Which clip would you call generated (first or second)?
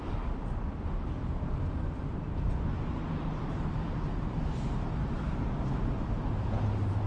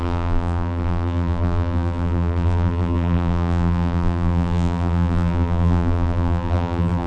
second